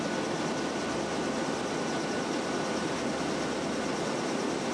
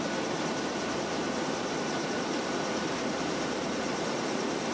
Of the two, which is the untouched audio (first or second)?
first